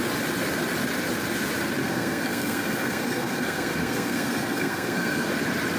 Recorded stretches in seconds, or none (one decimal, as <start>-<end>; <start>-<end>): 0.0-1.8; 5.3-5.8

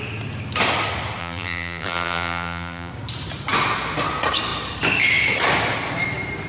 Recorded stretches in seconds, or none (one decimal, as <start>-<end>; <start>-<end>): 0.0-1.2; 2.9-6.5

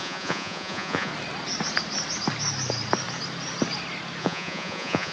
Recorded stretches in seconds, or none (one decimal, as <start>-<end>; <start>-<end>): 1.1-4.2

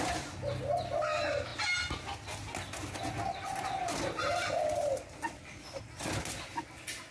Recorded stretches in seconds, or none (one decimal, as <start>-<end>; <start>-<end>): 0.0-7.1

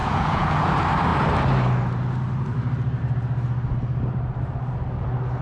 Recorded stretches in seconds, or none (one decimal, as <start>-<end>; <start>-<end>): 0.7-5.4